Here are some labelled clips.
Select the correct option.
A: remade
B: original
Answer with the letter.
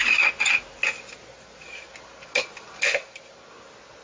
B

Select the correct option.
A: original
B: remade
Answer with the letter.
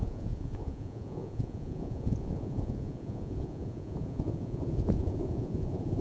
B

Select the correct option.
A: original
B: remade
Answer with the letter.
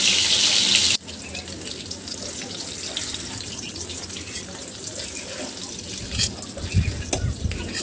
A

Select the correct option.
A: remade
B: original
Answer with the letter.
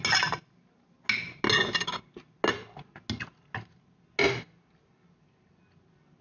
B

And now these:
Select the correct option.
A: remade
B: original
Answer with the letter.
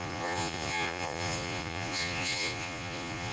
A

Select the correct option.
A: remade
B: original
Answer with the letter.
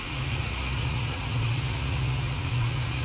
A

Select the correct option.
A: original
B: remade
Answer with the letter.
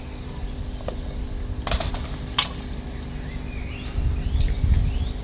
A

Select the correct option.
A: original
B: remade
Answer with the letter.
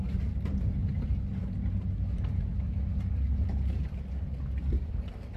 A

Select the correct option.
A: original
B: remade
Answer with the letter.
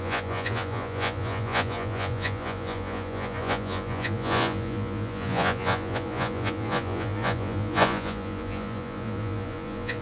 B